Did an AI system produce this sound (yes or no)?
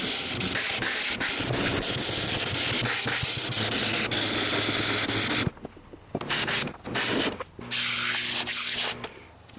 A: no